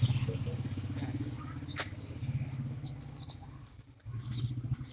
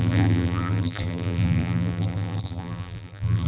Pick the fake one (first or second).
second